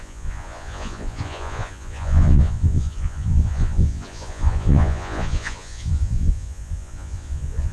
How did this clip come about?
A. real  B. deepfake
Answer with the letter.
B